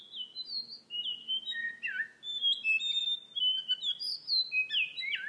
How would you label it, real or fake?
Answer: real